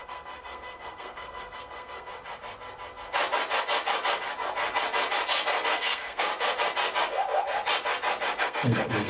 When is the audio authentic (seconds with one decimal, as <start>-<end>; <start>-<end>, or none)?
2.1-5.7; 6.3-8.4